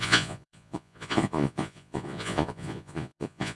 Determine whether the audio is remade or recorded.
remade